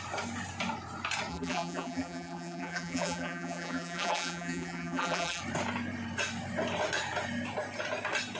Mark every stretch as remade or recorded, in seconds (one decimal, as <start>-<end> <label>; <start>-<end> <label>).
0.0-1.3 recorded; 1.3-5.4 remade; 5.4-8.4 recorded